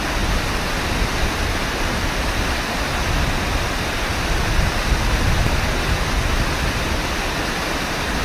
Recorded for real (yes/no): yes